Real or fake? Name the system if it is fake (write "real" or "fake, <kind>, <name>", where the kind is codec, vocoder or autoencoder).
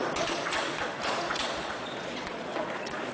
fake, vocoder, Vocos